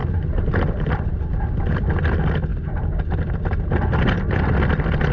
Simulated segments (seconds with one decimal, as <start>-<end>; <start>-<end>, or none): 0.0-1.9